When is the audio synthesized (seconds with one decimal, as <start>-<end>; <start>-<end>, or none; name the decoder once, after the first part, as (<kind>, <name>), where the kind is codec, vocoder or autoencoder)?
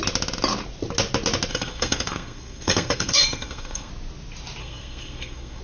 1.5-3.9 (codec, SNAC); 4.6-5.6